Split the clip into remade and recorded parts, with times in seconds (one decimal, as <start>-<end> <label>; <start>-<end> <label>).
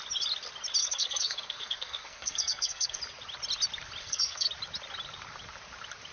0.0-0.8 recorded; 0.8-3.0 remade; 3.0-4.0 recorded; 4.0-4.5 remade; 4.5-6.1 recorded